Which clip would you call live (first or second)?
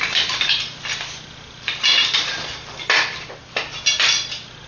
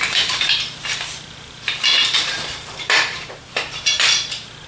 first